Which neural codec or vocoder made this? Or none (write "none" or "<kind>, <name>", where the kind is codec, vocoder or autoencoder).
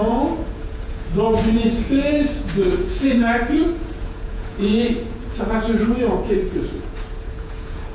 vocoder, Vocos